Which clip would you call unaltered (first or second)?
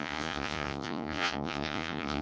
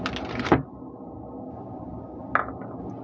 second